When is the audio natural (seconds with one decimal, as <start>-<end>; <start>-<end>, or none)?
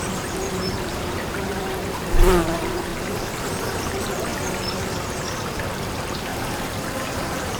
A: 2.9-3.4; 4.3-5.3